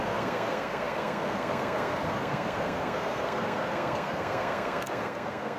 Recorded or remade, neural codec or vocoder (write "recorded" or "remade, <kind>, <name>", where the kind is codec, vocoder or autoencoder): remade, codec, SNAC